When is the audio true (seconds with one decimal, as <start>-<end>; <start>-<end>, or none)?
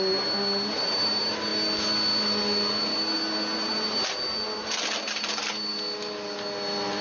0.0-7.0